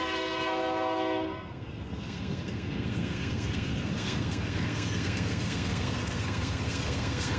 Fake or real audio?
fake